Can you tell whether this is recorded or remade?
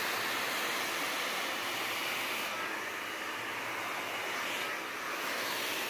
recorded